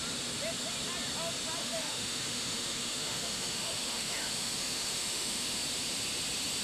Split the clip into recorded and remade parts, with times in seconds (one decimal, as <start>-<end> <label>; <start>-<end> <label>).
0.0-1.6 recorded; 1.6-5.6 remade; 5.6-6.6 recorded

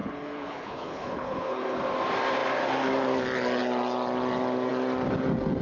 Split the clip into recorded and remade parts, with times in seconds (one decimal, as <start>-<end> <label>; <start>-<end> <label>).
0.0-1.8 remade; 1.8-5.6 recorded